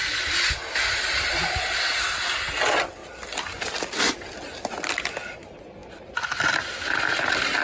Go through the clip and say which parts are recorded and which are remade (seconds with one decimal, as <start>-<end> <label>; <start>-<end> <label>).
0.0-7.6 recorded